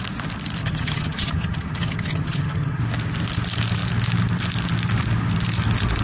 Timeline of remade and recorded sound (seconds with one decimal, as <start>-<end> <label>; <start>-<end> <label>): 0.0-0.6 recorded; 0.6-2.8 remade; 2.8-6.0 recorded